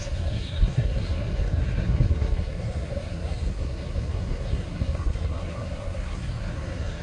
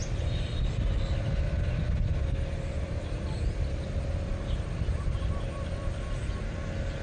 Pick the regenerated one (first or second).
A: first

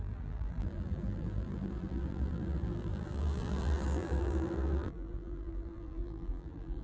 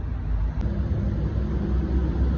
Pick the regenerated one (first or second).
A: first